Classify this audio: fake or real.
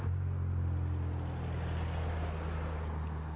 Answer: real